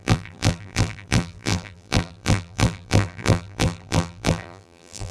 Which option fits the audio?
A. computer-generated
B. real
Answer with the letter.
A